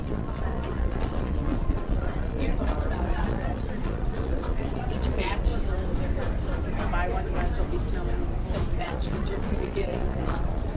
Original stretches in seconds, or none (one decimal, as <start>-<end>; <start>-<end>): 5.5-8.8